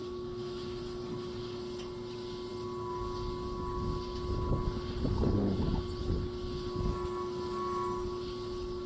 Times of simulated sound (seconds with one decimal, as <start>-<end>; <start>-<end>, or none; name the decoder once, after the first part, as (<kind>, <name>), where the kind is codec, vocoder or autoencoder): 0.0-0.8 (autoencoder, DAC-VAE)

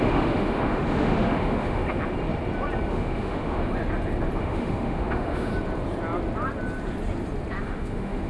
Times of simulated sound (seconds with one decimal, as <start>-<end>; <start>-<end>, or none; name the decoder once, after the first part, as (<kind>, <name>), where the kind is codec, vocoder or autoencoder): 0.0-1.8 (autoencoder, DAC-VAE); 2.9-3.7; 4.4-5.5; 7.6-8.3

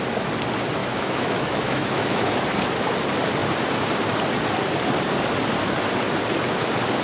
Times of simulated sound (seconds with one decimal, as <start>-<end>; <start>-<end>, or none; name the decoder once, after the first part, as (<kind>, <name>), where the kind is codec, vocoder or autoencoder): 0.8-2.3 (autoencoder, DAC-VAE)